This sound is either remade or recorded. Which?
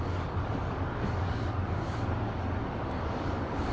remade